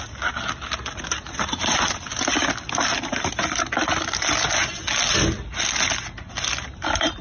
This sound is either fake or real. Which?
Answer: real